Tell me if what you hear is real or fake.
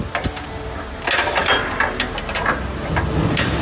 real